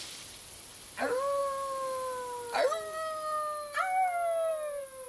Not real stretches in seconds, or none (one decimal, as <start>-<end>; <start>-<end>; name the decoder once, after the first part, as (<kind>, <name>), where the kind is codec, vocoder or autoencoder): none